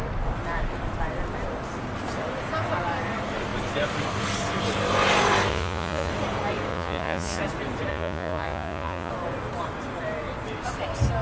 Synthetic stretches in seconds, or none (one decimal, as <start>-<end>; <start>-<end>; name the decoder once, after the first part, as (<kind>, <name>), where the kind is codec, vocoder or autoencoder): 5.5-6.1 (vocoder, Vocos); 6.7-7.4; 7.9-9.1